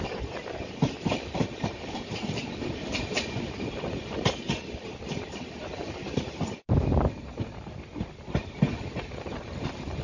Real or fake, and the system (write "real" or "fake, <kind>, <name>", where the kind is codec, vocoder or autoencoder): fake, vocoder, BigVGAN v2